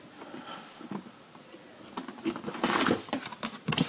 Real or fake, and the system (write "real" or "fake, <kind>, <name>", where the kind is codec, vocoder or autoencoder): real